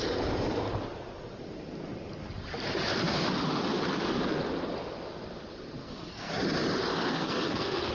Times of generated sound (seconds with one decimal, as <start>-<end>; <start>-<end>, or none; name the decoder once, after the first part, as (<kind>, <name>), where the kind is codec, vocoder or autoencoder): 5.8-6.3 (codec, SNAC); 6.9-7.9

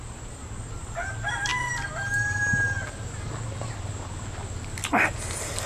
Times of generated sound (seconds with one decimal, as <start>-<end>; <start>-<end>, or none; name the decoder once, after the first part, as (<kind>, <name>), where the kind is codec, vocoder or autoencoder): none

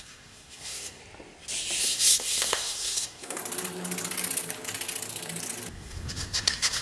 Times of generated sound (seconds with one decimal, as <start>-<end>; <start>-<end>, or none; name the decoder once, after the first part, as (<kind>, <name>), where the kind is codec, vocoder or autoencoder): 0.0-1.0 (codec, SNAC); 1.8-3.4; 5.7-6.8

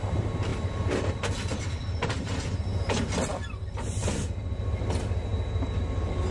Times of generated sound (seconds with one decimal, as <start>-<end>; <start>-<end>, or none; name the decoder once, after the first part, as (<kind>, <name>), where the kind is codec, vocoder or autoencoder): 0.5-4.2 (vocoder, BigVGAN v2)

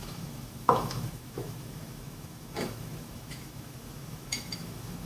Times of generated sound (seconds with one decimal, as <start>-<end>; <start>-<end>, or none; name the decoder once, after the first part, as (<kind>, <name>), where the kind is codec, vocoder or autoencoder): 0.0-5.1 (autoencoder, DAC-VAE)

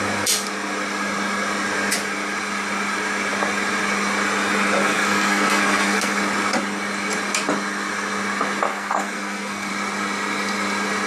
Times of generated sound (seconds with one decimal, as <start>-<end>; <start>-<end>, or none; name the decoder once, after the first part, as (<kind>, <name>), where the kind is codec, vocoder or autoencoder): 4.8-6.2 (codec, SNAC); 8.7-9.7

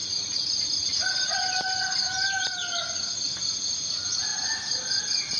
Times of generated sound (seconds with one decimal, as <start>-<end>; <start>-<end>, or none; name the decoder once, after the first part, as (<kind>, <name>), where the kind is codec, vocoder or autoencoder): none

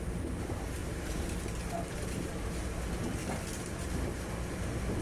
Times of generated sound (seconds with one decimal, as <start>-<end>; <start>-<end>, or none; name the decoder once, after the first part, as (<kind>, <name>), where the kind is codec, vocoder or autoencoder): 0.8-2.5 (vocoder, BigVGAN v2)